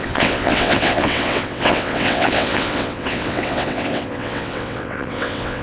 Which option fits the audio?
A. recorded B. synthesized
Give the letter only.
B